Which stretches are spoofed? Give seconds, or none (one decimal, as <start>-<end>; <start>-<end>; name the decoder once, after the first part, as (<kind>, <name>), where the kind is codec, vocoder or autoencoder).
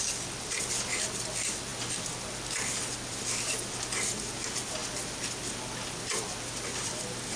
none